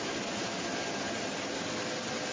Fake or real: real